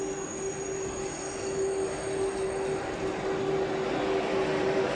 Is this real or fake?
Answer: real